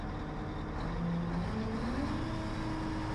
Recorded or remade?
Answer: recorded